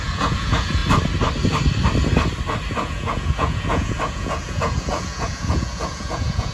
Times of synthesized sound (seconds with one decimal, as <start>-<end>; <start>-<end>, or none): 0.0-0.8; 2.7-6.5